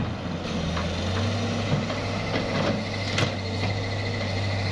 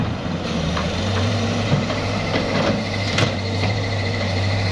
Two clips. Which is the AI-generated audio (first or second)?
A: second